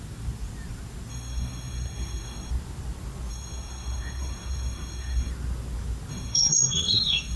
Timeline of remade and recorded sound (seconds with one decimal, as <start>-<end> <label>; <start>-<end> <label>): 0.0-1.1 recorded; 1.1-2.5 remade; 2.5-3.3 recorded; 3.3-5.3 remade; 5.3-6.1 recorded; 6.1-7.4 remade